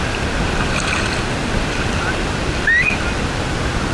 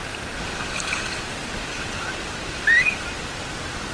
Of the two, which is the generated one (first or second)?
second